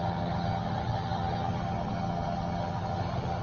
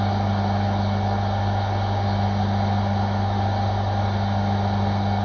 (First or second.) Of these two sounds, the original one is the second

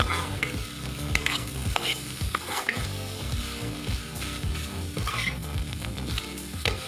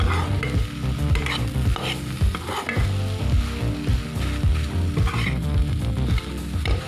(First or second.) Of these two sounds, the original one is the second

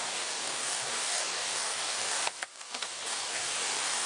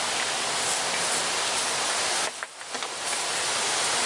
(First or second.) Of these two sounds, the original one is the second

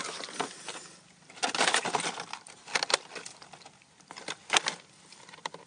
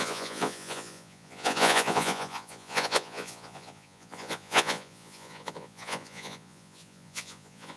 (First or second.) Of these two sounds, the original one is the first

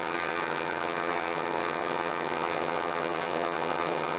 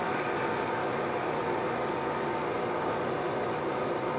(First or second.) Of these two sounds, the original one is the second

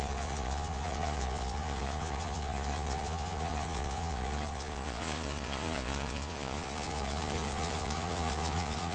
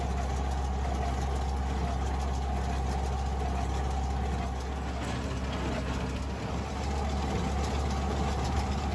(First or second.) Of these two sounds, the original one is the second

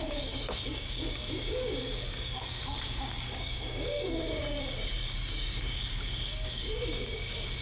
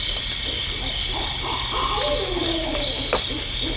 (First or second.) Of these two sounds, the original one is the second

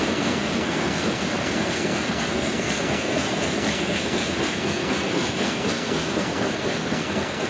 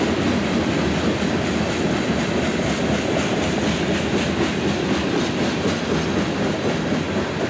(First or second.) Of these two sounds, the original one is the second